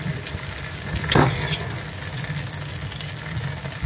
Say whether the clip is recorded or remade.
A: recorded